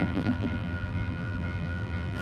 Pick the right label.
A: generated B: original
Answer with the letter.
A